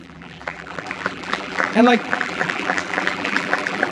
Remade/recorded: remade